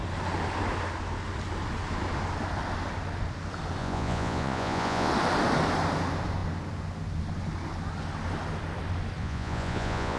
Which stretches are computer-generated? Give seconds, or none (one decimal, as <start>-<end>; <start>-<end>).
3.8-5.1; 9.2-10.2